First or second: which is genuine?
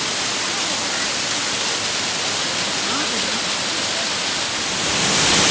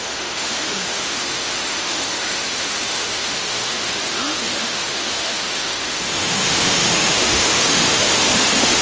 first